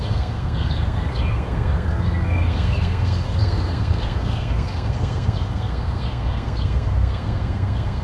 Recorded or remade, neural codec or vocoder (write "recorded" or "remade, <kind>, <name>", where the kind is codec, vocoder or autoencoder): remade, codec, SNAC